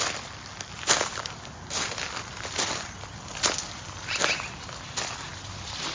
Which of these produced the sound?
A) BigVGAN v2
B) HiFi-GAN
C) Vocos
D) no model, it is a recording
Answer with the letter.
D